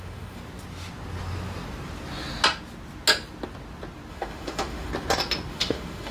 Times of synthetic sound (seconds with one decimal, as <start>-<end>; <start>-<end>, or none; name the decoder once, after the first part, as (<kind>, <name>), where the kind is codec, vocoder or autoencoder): 0.0-0.4 (autoencoder, DAC-VAE); 4.1-4.9; 5.5-6.1